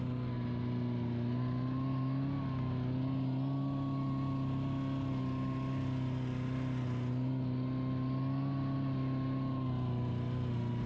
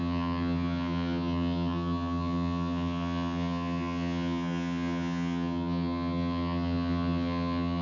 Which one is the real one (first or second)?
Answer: first